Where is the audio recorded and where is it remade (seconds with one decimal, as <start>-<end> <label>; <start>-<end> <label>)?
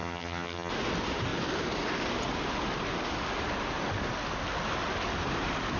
0.0-0.7 remade; 0.7-5.8 recorded